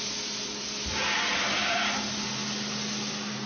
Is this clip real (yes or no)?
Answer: yes